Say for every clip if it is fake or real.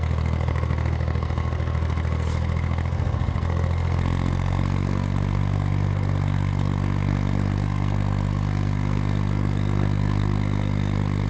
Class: fake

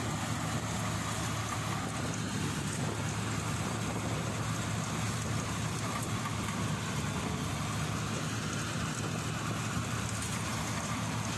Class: real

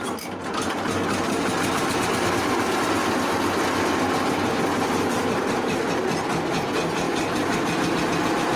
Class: real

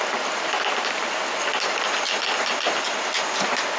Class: real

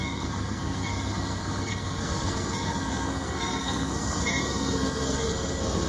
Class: fake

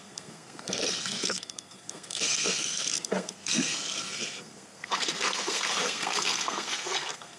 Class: fake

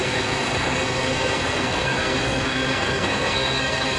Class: fake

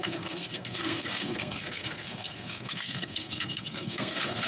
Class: fake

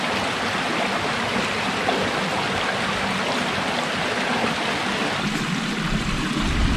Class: real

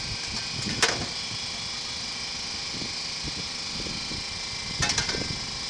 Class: real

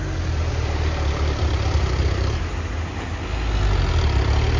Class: real